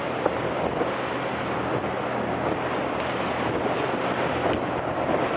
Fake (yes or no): no